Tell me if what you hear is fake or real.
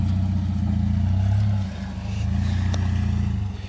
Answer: real